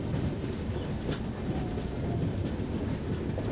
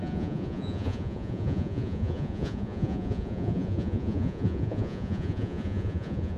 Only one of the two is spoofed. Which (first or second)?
second